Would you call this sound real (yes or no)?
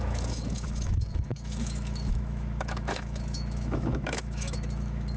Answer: no